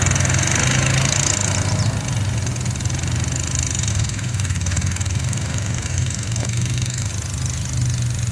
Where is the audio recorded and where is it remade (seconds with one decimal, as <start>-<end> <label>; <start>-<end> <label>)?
0.0-3.9 recorded; 3.9-7.1 remade; 7.1-8.3 recorded